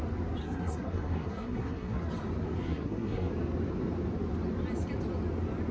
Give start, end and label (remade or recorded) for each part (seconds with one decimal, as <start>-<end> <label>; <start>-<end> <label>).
0.0-0.4 recorded; 0.4-2.1 remade; 2.1-2.6 recorded; 2.6-3.3 remade; 3.3-5.7 recorded